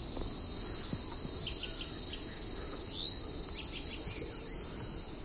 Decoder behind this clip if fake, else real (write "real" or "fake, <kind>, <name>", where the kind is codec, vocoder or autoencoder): real